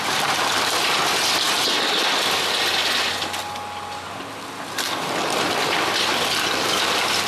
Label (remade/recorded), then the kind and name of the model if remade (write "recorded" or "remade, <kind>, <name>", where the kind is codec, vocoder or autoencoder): recorded